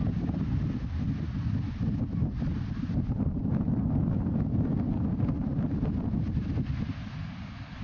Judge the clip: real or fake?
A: real